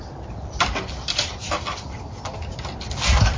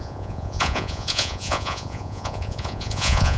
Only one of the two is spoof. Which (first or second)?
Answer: second